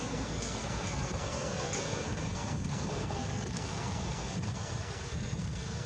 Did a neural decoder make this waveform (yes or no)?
yes